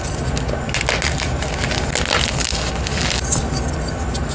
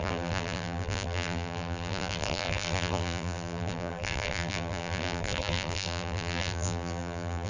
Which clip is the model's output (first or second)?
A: second